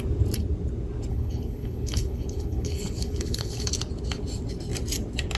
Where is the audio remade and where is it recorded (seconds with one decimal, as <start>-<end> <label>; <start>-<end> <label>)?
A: 0.0-1.1 recorded; 1.1-3.7 remade; 3.7-5.4 recorded